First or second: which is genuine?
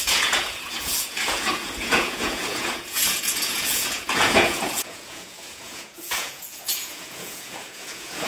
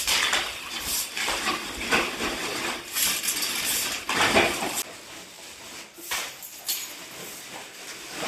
second